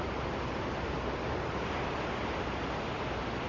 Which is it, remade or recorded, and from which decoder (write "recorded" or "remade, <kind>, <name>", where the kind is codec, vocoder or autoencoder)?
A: recorded